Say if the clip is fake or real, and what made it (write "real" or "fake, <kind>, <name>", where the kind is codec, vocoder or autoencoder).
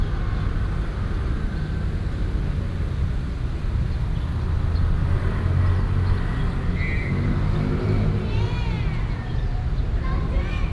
real